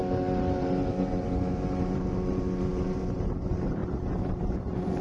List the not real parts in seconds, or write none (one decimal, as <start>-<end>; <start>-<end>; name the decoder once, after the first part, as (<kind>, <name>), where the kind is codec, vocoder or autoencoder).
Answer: 0.0-3.8 (vocoder, BigVGAN v2); 4.3-5.0